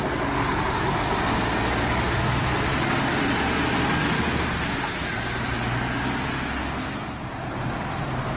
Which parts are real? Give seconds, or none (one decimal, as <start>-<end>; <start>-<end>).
0.0-8.4